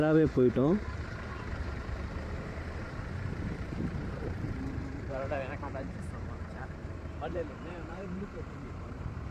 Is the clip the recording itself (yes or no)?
no